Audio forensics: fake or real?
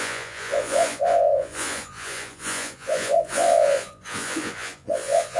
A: fake